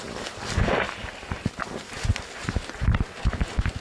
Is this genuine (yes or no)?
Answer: yes